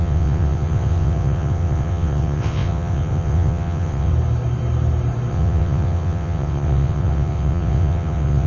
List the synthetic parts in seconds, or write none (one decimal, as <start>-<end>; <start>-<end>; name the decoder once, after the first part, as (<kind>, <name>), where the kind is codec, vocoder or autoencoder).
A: 0.0-4.1 (vocoder, WaveNeXt); 5.3-8.5